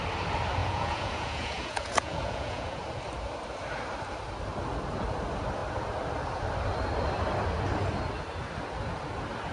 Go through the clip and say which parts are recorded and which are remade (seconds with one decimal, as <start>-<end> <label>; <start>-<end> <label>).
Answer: 0.0-0.6 recorded; 0.6-2.8 remade; 2.8-9.5 recorded